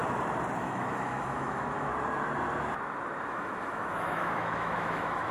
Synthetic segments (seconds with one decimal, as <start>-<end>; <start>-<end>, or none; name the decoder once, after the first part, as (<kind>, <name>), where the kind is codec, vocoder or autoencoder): 0.6-1.9 (autoencoder, DAC-VAE); 3.3-5.3